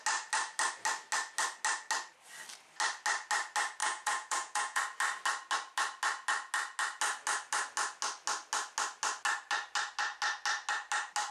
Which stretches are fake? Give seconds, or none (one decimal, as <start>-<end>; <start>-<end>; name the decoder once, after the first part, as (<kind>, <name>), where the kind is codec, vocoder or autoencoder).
3.8-4.8 (vocoder, Vocos)